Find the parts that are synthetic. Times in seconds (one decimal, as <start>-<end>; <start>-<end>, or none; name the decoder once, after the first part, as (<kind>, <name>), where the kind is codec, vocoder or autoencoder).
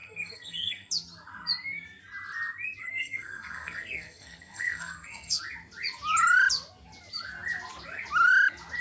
0.0-0.9 (codec, SNAC); 2.8-5.4